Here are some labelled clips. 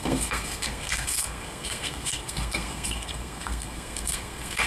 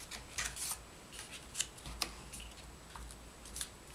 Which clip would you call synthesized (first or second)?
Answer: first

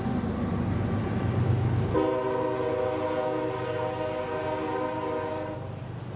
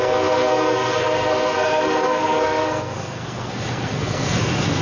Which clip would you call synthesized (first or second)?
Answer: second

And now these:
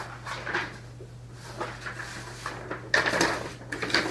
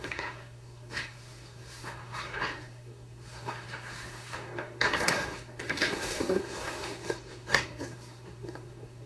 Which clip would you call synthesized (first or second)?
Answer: second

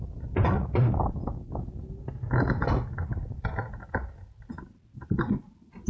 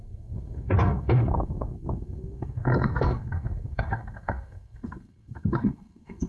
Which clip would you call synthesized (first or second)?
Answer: second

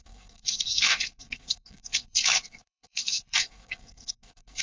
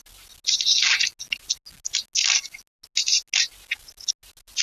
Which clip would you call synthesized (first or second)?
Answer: first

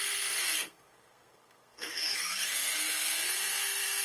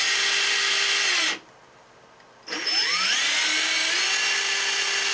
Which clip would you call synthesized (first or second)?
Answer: first